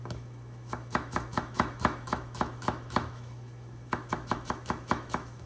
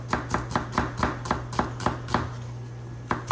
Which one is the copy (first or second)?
first